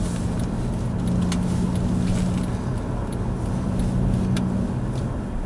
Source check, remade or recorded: recorded